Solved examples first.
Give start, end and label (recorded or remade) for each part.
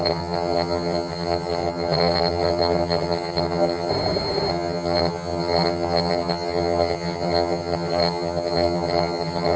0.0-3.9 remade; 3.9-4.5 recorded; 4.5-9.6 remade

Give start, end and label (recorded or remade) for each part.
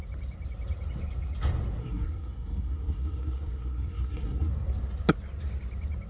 0.0-1.8 recorded; 1.8-4.5 remade; 4.5-6.1 recorded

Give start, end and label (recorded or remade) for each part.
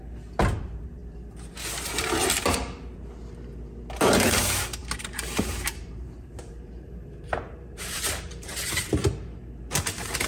0.0-4.8 recorded; 4.8-9.1 remade; 9.1-10.3 recorded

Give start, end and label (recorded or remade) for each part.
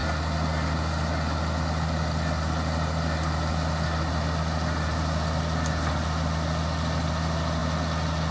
0.0-8.3 recorded